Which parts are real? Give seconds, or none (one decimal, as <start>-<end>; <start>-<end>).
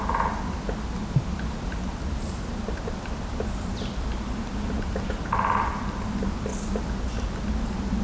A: 0.0-1.0; 5.0-8.0